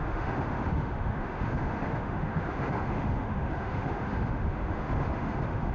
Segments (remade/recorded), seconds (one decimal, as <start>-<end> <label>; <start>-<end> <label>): 0.0-5.7 remade